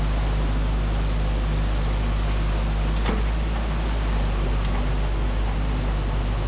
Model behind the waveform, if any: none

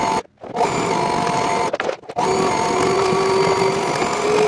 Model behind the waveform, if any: none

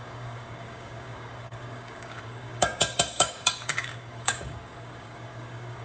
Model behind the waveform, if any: codec, DAC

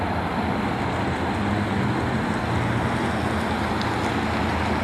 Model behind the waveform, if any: none